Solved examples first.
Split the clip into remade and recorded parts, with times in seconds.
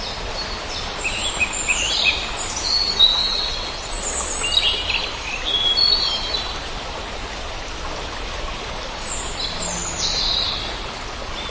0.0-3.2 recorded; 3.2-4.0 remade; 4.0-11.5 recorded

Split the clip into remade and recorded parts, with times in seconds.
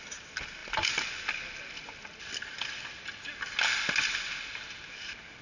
0.0-5.4 recorded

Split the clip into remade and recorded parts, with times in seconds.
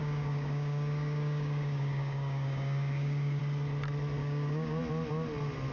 0.0-3.4 remade; 3.4-4.2 recorded; 4.2-4.8 remade; 4.8-5.7 recorded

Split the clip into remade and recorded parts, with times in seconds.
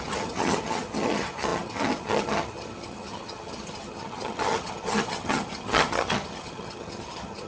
0.0-7.5 remade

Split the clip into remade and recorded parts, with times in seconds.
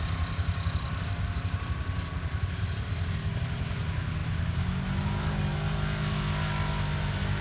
0.0-7.4 recorded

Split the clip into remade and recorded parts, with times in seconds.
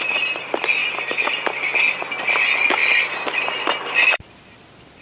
0.0-0.8 recorded; 0.8-1.3 remade; 1.3-2.8 recorded; 2.8-4.3 remade; 4.3-5.0 recorded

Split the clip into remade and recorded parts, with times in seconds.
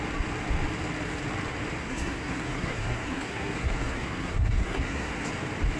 0.0-1.8 recorded; 1.8-5.3 remade; 5.3-5.8 recorded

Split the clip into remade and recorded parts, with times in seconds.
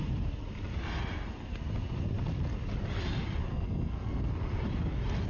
0.0-3.5 recorded; 3.5-4.3 remade; 4.3-5.3 recorded